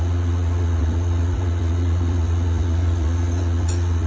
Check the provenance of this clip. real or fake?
fake